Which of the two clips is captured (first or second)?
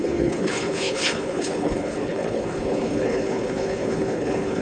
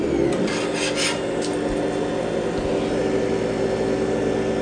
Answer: second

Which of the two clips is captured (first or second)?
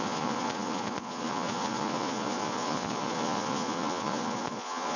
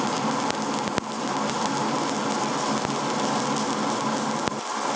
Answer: second